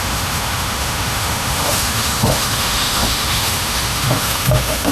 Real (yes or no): no